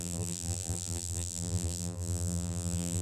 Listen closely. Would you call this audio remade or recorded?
remade